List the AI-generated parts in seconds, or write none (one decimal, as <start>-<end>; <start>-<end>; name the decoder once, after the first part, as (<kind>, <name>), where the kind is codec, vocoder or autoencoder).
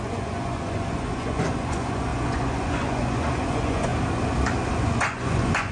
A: 0.0-3.9 (vocoder, Vocos); 4.7-5.7